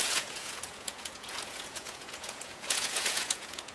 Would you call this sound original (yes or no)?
no